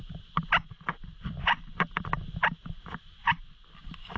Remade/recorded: recorded